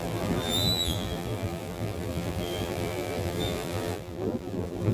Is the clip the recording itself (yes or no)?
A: no